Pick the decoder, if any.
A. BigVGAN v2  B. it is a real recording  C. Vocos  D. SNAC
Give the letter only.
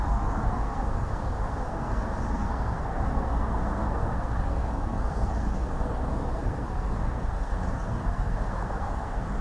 D